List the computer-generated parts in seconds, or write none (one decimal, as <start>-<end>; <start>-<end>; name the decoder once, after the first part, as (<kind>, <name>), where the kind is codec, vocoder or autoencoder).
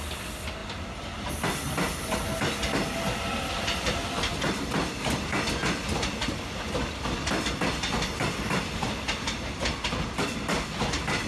none